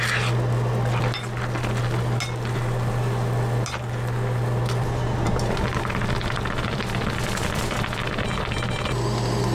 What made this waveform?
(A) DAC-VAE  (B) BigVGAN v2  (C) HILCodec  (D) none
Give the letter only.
D